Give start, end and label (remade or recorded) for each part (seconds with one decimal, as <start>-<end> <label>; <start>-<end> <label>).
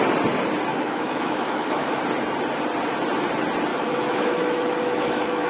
0.0-0.7 recorded; 0.7-2.0 remade; 2.0-3.7 recorded; 3.7-5.5 remade